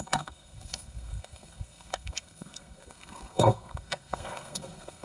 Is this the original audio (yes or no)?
no